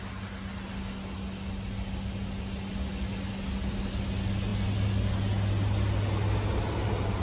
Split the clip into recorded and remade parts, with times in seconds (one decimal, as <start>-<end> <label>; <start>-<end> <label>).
0.0-7.2 recorded